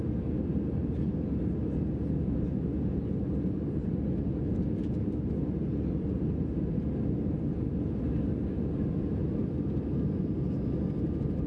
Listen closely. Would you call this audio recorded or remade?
recorded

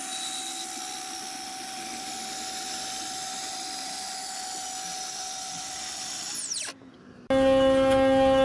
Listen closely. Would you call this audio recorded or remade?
recorded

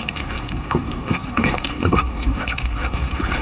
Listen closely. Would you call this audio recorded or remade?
remade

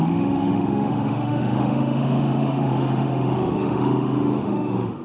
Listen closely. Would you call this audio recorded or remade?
remade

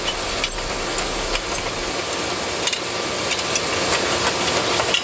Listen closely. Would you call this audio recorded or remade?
recorded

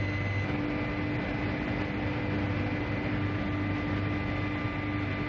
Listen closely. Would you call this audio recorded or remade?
recorded